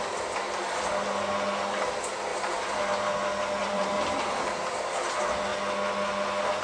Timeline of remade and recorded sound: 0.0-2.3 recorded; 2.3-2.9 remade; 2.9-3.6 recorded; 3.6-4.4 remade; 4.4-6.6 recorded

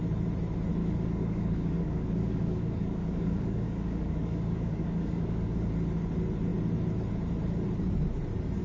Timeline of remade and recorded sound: 0.0-0.8 recorded; 0.8-5.7 remade; 5.7-8.6 recorded

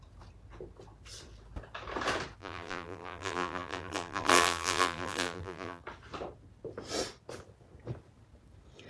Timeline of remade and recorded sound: 0.0-2.4 recorded; 2.4-5.8 remade; 5.8-8.9 recorded

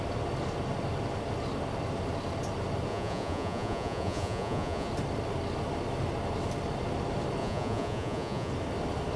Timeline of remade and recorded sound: 0.0-2.9 recorded; 2.9-4.9 remade; 4.9-7.4 recorded; 7.4-8.5 remade; 8.5-9.2 recorded

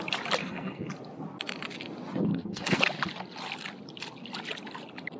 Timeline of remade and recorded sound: 0.0-0.4 recorded; 0.4-0.9 remade; 0.9-2.3 recorded; 2.3-2.8 remade; 2.8-5.2 recorded

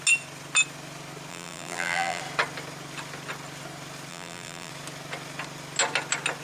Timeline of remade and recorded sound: 0.0-1.3 recorded; 1.3-2.2 remade; 2.2-4.1 recorded; 4.1-4.7 remade; 4.7-6.4 recorded